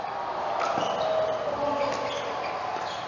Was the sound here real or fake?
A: real